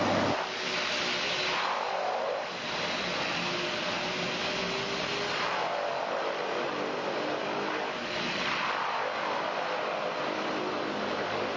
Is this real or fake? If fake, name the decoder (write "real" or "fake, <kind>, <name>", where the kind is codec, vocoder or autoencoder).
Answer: real